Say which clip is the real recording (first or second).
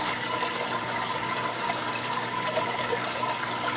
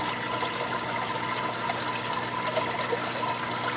second